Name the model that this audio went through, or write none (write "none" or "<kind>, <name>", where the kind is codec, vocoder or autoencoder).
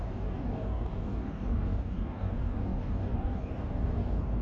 codec, DAC